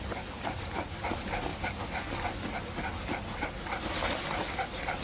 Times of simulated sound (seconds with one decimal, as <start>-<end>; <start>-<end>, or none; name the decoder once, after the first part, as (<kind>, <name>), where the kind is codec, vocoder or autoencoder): none